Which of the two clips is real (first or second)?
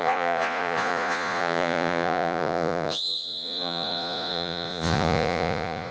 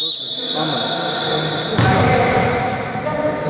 second